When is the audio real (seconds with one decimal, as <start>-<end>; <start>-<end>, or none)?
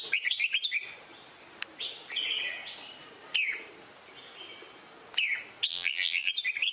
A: 0.0-5.7; 6.3-6.7